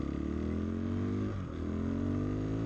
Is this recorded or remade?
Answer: recorded